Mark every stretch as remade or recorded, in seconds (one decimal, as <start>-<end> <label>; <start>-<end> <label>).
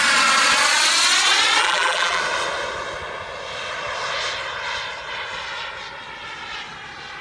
0.0-1.6 recorded; 1.6-2.2 remade; 2.2-7.2 recorded